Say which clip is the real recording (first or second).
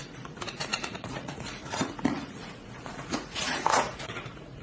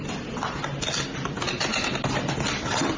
second